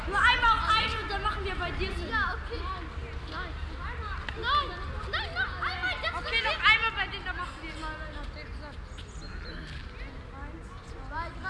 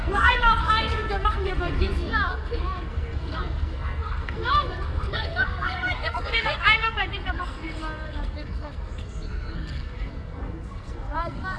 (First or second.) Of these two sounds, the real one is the first